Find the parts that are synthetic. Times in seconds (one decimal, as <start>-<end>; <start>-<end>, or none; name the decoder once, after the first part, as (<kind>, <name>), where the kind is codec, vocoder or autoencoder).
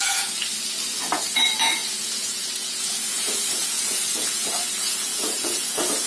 0.0-0.4 (vocoder, Vocos); 1.0-6.1